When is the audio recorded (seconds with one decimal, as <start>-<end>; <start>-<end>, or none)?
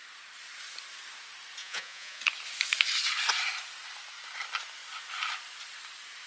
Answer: 0.0-1.6; 2.2-6.3